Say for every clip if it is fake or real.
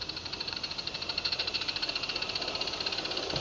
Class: real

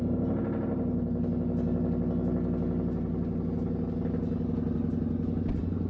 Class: real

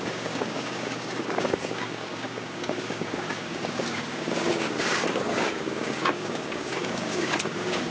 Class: fake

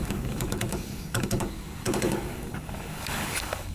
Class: fake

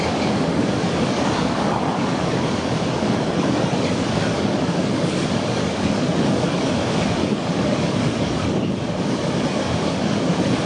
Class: fake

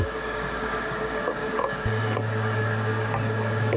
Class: fake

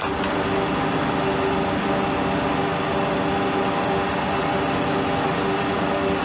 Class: real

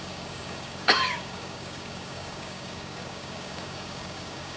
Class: fake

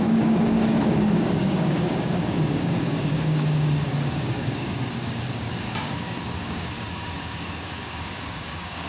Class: fake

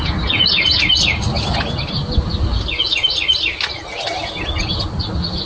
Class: real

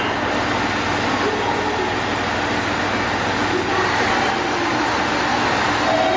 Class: real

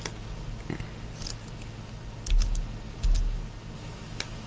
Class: real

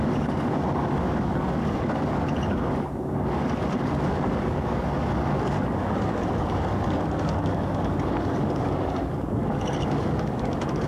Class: fake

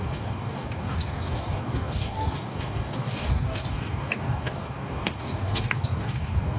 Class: fake